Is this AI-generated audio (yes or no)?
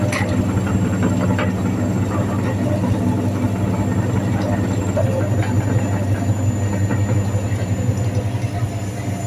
no